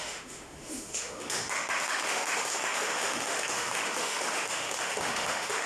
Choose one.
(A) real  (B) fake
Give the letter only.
B